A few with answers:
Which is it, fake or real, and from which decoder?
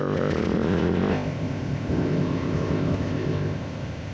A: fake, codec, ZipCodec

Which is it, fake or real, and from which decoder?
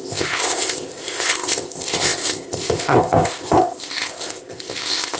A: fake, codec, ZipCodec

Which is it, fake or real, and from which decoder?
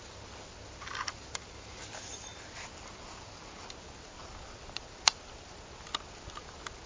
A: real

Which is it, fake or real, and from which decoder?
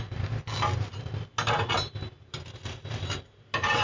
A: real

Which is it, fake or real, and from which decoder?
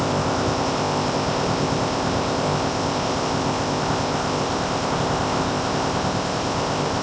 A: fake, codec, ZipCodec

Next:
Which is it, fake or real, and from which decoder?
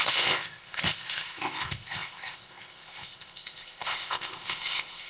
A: fake, codec, ZipCodec